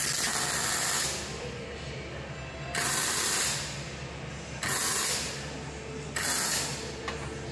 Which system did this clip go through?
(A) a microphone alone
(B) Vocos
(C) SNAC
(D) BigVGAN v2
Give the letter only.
A